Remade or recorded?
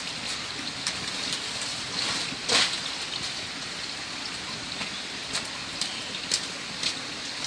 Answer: recorded